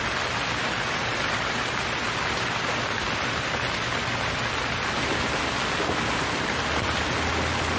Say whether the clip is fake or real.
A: real